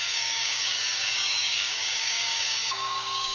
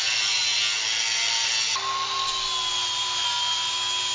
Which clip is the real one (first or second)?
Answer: second